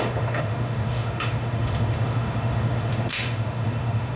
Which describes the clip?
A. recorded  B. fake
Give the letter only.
B